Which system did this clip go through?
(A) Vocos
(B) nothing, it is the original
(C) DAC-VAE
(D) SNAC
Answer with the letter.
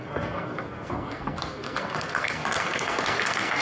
D